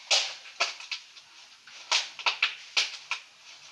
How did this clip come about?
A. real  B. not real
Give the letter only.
A